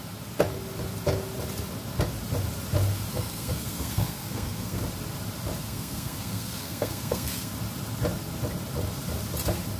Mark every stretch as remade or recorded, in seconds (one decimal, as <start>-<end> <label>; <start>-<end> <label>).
0.0-3.1 recorded; 3.1-4.8 remade; 4.8-5.6 recorded; 5.6-7.5 remade; 7.5-9.8 recorded